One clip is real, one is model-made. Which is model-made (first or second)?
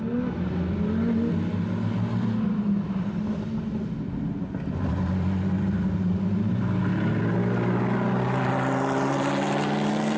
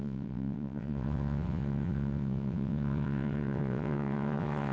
second